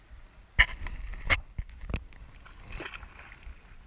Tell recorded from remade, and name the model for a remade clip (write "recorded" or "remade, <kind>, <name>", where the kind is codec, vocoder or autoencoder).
recorded